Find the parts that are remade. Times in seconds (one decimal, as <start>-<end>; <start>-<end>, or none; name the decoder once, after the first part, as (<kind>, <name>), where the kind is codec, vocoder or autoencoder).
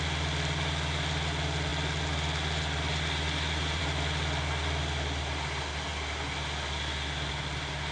none